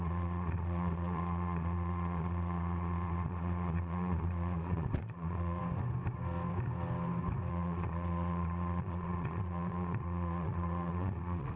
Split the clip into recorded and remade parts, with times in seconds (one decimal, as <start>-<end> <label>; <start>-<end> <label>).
0.0-5.6 remade; 5.6-7.5 recorded; 7.5-11.6 remade